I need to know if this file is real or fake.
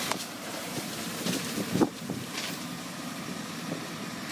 fake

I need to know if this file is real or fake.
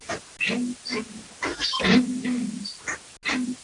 real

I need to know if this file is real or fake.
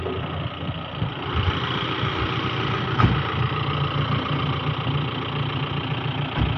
real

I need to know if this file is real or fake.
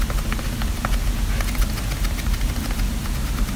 real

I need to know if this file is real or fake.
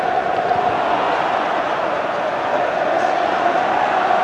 fake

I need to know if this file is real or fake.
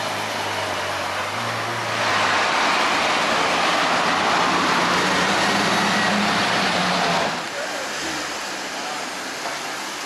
real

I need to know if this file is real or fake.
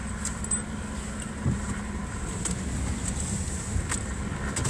real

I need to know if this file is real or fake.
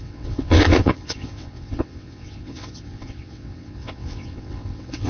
fake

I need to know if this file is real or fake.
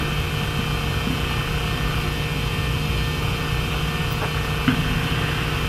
real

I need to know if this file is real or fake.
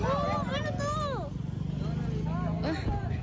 real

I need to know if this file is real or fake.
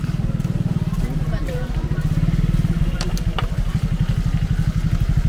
real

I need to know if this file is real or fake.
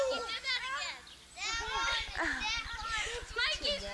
real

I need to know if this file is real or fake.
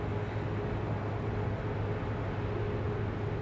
real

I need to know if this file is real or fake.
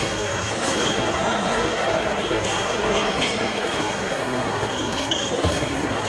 fake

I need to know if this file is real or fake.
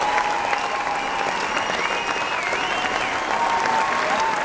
real